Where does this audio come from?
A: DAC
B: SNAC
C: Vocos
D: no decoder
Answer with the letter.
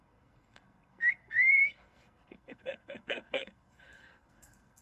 B